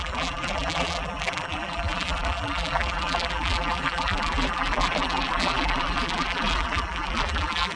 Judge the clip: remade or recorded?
remade